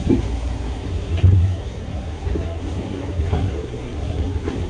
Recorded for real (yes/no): no